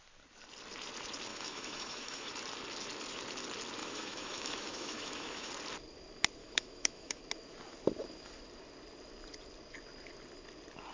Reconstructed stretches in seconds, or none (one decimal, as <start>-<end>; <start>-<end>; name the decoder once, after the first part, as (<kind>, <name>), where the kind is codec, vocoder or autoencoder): 1.3-2.3 (autoencoder, DAC-VAE); 3.8-5.5; 6.4-7.2

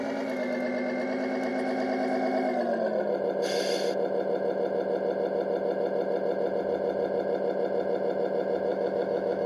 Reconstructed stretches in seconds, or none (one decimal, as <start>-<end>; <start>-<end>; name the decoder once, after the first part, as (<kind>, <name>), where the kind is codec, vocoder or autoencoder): 8.7-9.5 (autoencoder, DAC-VAE)